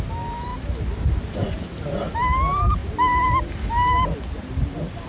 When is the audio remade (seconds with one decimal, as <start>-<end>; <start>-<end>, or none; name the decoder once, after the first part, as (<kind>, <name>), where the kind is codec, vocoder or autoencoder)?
none